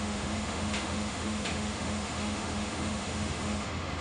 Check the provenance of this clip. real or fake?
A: fake